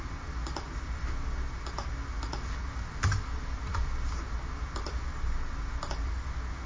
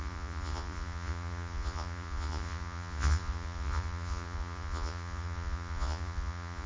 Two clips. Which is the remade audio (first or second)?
second